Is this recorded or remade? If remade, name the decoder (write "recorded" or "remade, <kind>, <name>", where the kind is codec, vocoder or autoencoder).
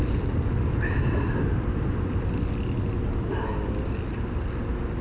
recorded